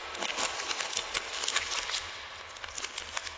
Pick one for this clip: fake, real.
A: real